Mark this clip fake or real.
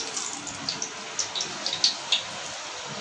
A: real